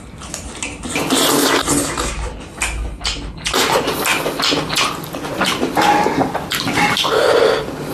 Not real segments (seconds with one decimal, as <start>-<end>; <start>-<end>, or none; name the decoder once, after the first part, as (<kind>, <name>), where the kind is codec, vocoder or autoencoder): none